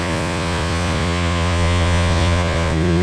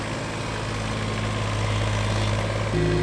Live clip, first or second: second